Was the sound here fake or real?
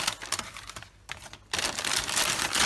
real